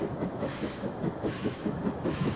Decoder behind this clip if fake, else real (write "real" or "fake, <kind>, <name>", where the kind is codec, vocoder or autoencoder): fake, autoencoder, DAC-VAE